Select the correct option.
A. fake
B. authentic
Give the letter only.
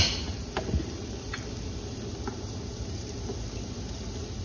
B